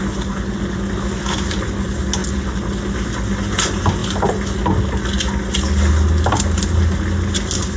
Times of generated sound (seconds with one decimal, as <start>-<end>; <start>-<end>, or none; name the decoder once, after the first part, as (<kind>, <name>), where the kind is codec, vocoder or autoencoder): none